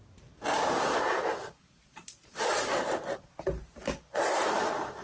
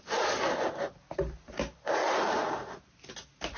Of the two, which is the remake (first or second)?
first